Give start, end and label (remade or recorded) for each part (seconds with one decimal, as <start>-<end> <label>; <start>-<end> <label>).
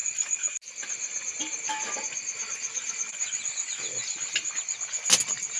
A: 0.0-5.6 recorded